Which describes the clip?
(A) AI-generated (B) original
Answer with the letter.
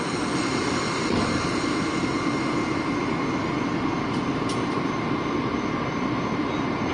A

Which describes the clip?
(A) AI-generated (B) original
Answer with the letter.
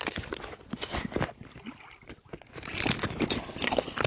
A